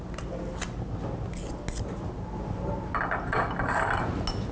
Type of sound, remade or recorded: recorded